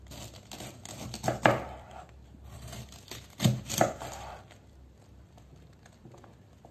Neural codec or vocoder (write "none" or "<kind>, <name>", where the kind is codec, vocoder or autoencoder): none